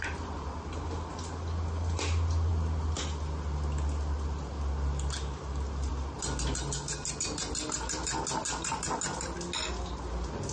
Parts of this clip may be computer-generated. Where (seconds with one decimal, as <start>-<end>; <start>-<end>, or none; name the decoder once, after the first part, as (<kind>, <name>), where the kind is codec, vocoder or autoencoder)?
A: none